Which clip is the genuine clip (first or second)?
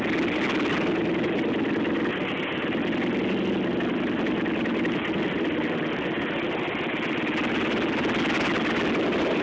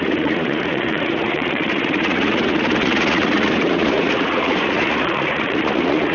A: first